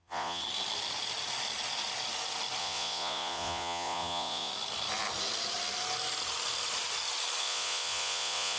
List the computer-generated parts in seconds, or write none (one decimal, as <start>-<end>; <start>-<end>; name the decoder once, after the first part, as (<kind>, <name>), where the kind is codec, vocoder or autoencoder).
0.0-0.4 (vocoder, Vocos); 2.6-4.5; 7.4-8.6